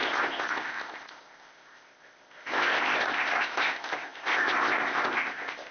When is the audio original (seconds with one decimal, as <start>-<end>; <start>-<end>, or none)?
none